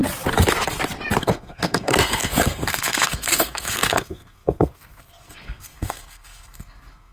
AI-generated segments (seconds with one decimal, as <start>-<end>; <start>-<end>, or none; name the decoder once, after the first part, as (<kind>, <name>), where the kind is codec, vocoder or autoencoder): 1.2-7.1 (codec, SNAC)